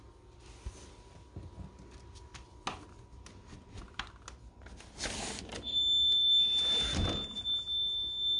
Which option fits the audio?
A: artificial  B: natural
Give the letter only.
B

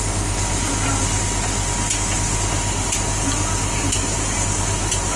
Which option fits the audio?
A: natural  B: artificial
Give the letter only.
A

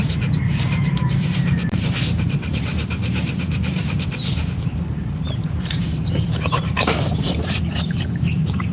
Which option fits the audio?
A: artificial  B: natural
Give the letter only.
A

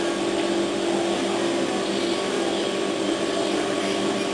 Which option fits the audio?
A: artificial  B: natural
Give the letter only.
B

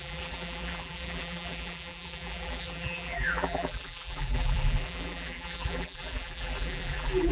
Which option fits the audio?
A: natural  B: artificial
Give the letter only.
B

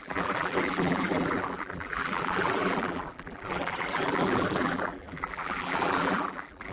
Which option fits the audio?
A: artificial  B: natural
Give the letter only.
A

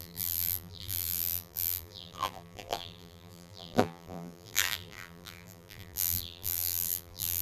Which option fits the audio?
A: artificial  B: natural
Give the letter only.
A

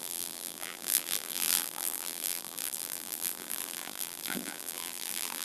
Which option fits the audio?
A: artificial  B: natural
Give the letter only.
A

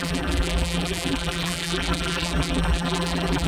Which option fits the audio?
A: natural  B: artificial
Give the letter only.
B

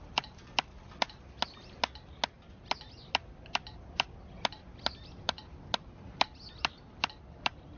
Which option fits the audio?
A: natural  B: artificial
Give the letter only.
A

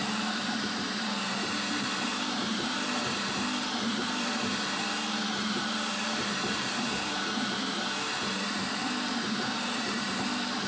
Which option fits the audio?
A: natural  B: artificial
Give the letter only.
B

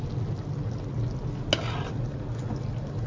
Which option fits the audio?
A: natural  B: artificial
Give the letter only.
A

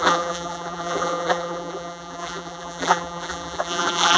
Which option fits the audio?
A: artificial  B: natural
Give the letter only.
A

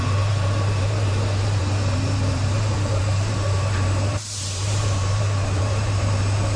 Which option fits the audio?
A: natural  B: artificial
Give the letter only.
B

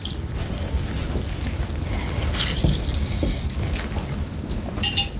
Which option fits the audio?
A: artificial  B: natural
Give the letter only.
B